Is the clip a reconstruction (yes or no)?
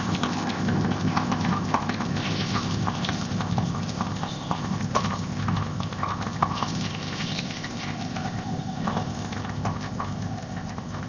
yes